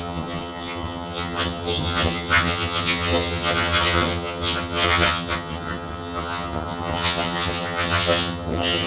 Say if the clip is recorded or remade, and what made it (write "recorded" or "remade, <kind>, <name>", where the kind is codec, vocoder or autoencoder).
remade, vocoder, HiFi-GAN